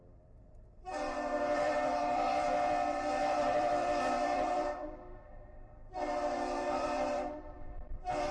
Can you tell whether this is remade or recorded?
remade